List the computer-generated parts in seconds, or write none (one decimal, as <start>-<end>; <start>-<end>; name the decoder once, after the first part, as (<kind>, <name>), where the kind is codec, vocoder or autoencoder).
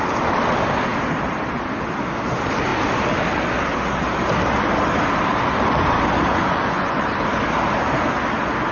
6.3-7.1 (vocoder, Vocos)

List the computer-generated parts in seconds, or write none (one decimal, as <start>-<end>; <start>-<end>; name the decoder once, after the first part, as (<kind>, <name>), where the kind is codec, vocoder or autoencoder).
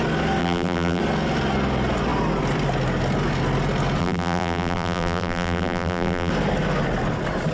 0.4-1.0 (vocoder, BigVGAN v2); 4.0-6.3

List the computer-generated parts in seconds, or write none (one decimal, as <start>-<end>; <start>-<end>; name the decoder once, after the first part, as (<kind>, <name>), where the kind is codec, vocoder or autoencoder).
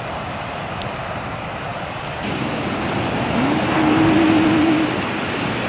none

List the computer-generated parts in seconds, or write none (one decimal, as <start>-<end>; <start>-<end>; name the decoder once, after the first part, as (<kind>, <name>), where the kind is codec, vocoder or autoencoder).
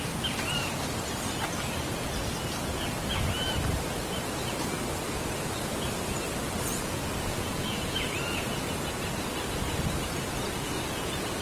6.7-8.7 (vocoder, Vocos)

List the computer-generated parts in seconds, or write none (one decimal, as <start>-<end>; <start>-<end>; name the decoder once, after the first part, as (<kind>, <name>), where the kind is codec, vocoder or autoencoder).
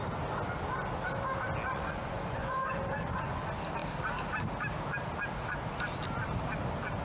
1.7-3.4 (vocoder, Vocos)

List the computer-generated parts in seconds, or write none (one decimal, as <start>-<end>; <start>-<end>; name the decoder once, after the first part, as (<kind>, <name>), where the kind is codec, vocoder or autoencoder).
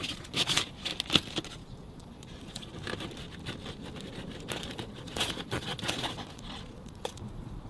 0.0-0.9 (vocoder, Vocos); 1.5-2.7; 4.7-7.7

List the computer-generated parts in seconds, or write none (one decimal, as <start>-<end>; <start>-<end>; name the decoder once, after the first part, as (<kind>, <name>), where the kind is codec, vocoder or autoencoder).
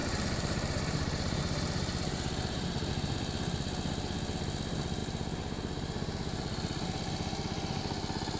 0.0-2.9 (vocoder, BigVGAN v2)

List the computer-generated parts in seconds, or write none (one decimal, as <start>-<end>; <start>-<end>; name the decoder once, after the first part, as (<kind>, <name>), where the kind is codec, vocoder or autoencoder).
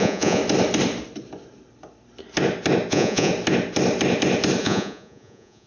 0.0-0.4 (vocoder, Vocos); 2.9-3.3; 4.6-5.7